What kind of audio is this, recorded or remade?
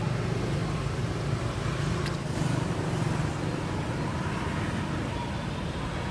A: recorded